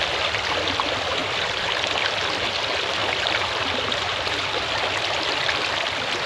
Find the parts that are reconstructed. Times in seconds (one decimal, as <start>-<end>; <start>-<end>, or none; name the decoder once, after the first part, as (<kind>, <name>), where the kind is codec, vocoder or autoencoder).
1.2-2.1 (vocoder, BigVGAN v2); 3.0-4.3